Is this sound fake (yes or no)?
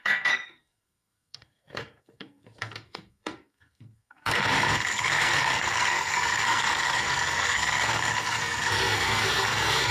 yes